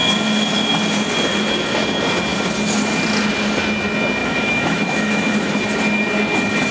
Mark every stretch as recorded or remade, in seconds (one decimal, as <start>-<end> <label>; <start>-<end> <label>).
0.0-4.2 recorded; 4.2-5.6 remade; 5.6-6.7 recorded